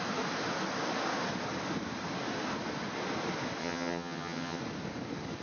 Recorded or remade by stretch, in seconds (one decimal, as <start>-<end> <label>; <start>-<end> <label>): 0.0-3.6 recorded; 3.6-4.6 remade; 4.6-5.4 recorded